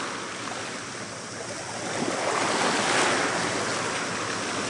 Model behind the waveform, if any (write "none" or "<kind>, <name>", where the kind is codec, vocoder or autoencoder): none